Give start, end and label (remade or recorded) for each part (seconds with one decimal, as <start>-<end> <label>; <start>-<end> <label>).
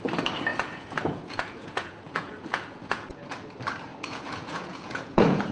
0.0-0.5 recorded; 0.5-3.2 remade; 3.2-3.9 recorded; 3.9-5.5 remade